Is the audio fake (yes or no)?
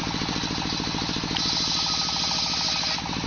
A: no